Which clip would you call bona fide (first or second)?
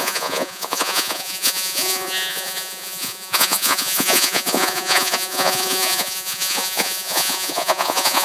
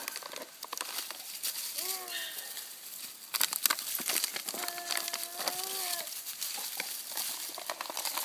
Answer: second